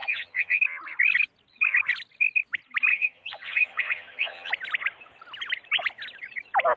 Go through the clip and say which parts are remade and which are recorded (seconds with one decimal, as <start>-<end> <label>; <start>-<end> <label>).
0.0-0.6 remade; 0.6-2.9 recorded; 2.9-4.5 remade; 4.5-6.8 recorded